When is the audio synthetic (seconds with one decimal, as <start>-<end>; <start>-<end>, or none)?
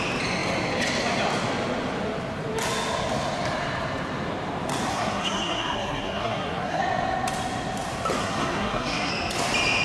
4.9-6.8; 8.2-9.1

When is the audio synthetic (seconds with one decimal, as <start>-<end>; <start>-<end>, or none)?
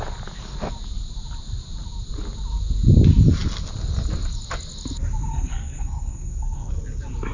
5.3-6.8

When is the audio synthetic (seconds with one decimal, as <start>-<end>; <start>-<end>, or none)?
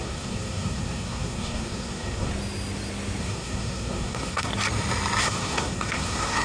0.0-2.3; 3.2-4.5; 5.2-6.4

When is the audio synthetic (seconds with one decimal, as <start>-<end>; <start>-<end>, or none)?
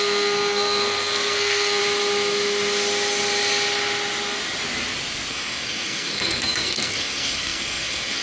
0.0-1.8; 5.3-8.2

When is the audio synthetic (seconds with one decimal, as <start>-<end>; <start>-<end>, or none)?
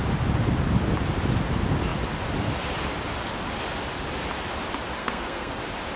5.0-5.6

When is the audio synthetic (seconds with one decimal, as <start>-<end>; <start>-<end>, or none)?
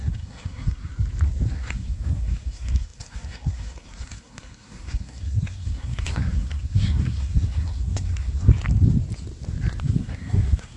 0.0-0.9; 1.5-8.5; 9.8-10.8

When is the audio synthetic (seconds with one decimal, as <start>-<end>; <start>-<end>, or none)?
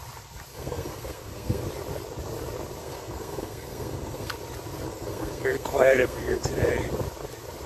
0.5-1.6; 2.8-4.3; 4.9-6.5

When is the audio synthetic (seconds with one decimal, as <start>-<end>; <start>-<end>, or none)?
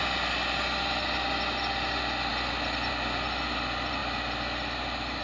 none